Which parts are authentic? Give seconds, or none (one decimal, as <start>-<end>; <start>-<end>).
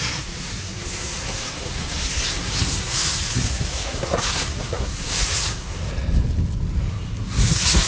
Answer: 5.8-6.9